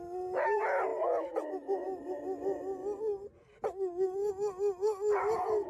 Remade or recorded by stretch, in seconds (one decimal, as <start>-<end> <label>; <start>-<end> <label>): 0.0-5.7 recorded